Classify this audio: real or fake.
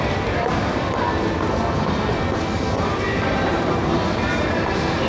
real